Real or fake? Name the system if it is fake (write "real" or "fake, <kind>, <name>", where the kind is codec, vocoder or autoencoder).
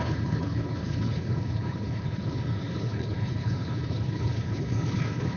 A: fake, codec, HILCodec